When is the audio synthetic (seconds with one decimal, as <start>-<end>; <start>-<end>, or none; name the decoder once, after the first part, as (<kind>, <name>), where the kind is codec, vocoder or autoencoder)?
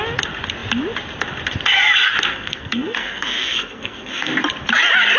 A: 2.3-4.3 (codec, SNAC)